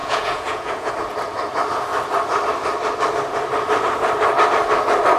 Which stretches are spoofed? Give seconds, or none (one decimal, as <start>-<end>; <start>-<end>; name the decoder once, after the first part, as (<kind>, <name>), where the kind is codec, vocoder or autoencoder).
0.0-0.9 (vocoder, Vocos)